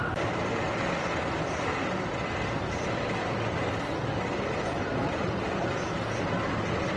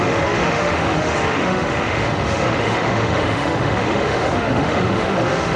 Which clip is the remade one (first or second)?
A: second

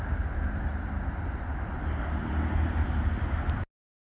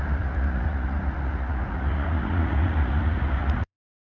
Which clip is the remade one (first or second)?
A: second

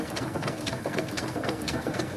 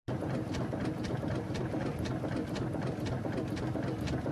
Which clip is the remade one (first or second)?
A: first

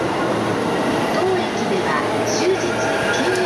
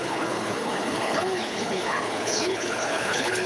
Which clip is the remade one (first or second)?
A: second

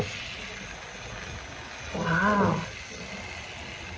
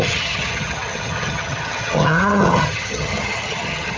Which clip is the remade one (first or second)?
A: second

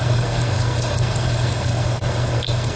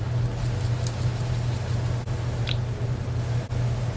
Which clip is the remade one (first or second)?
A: first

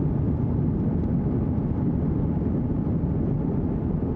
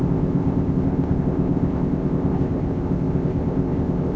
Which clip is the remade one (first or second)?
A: second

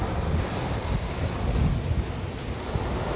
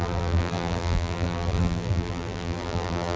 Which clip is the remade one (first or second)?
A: second